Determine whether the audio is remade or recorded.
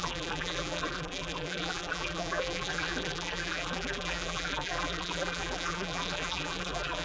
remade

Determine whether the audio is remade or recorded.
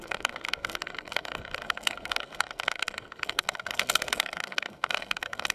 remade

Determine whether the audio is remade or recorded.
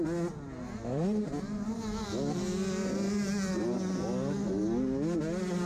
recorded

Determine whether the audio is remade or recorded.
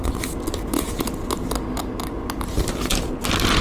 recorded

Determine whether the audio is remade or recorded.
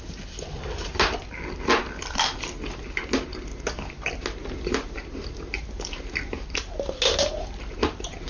recorded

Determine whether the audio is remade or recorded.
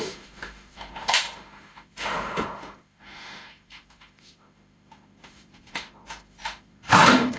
remade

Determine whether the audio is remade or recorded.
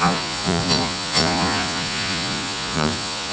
remade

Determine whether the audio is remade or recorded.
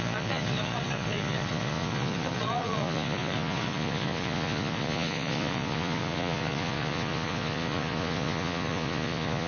remade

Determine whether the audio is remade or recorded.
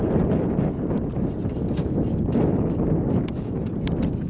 recorded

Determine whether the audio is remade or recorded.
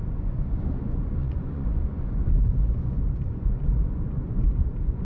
remade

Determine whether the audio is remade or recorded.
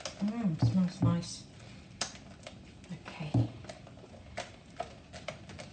recorded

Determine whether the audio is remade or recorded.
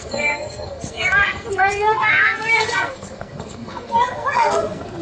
remade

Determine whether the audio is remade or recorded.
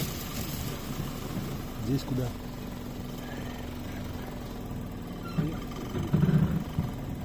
recorded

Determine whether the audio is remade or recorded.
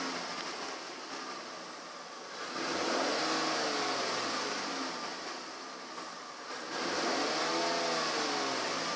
recorded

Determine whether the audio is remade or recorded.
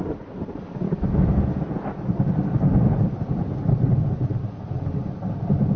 recorded